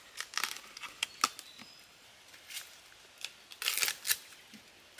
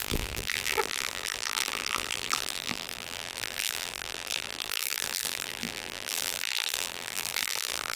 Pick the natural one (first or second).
first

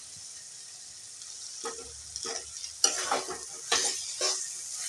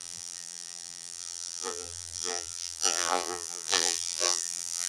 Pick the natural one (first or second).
first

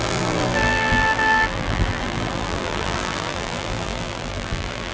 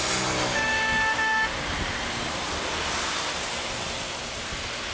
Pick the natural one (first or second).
second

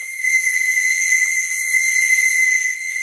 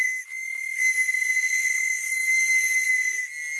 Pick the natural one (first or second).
second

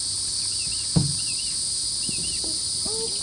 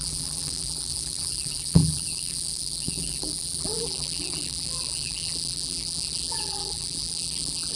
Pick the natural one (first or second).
first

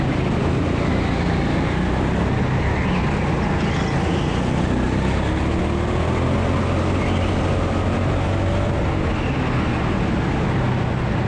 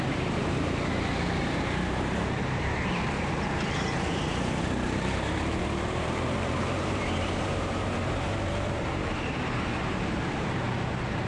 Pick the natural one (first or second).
first